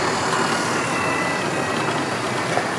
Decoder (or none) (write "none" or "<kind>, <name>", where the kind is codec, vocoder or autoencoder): none